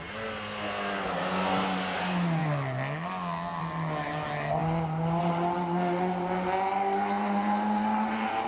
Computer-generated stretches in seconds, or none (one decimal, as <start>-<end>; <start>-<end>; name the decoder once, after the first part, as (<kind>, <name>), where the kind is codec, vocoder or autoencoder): none